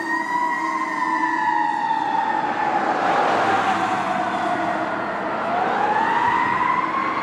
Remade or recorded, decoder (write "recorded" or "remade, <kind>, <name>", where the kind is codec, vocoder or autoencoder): recorded